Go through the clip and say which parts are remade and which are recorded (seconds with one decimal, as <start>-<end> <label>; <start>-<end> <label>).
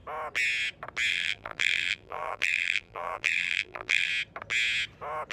0.0-1.1 recorded; 1.1-4.1 remade; 4.1-5.3 recorded